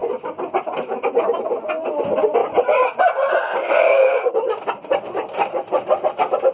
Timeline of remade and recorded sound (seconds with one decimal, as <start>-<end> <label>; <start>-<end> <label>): 0.0-3.6 recorded; 3.6-4.3 remade; 4.3-6.5 recorded